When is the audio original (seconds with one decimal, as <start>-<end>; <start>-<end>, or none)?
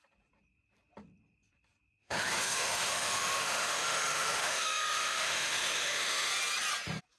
0.0-2.0; 6.3-7.2